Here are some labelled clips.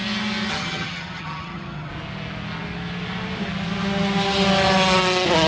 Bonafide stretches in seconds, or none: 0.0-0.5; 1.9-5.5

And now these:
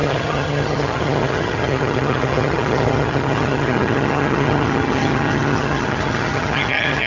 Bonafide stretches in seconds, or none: none